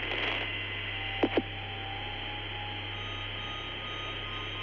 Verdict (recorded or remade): recorded